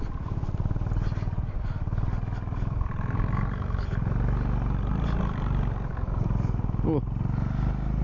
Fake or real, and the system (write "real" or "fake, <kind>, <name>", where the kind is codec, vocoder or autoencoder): real